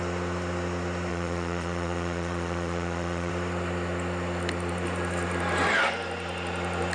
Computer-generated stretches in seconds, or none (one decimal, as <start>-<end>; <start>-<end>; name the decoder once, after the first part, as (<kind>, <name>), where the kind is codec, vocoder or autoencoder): 1.1-3.3 (vocoder, Vocos)